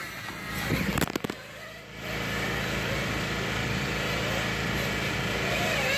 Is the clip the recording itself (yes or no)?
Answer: yes